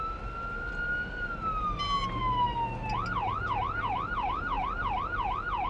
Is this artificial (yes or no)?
no